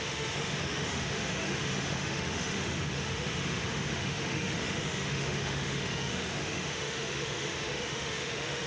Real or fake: fake